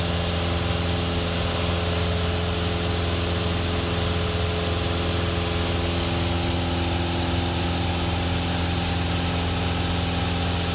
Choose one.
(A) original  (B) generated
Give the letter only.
A